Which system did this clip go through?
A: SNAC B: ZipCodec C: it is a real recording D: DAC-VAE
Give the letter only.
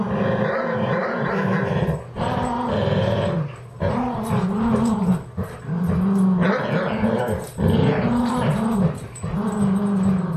C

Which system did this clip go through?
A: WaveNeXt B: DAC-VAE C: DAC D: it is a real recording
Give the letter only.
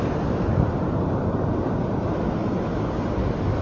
D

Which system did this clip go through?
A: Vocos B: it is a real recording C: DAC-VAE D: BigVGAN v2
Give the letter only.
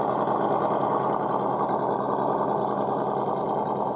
B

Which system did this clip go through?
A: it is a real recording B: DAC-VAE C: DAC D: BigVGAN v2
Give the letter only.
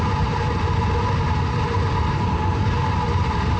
D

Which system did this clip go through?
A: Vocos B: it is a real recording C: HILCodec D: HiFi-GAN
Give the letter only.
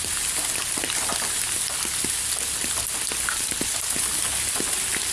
B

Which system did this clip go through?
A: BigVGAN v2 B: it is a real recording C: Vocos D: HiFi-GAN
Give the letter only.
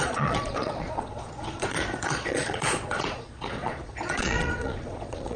C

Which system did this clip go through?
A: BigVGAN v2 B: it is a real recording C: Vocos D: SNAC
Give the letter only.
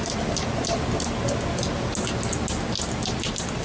B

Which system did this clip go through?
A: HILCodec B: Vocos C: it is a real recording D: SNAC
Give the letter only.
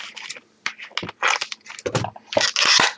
C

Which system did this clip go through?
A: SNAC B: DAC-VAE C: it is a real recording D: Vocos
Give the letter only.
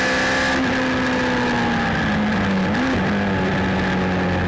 C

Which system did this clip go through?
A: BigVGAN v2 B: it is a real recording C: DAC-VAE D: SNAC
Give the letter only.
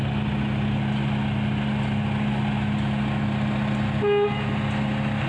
B